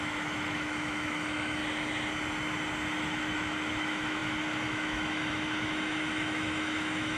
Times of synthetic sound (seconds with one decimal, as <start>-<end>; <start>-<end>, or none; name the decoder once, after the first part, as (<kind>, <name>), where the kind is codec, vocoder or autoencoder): 0.0-1.6 (autoencoder, DAC-VAE); 3.0-7.2